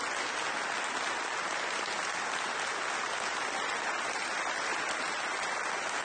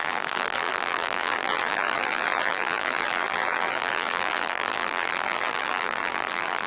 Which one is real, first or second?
first